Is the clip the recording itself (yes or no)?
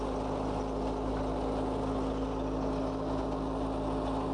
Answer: yes